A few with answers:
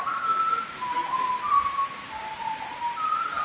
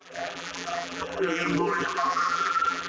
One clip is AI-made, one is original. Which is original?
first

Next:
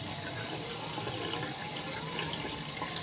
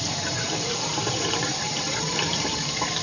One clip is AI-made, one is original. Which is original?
first